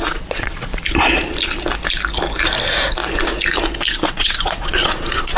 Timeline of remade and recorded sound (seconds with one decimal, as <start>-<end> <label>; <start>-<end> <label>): 0.0-0.7 remade; 0.7-3.9 recorded; 3.9-5.4 remade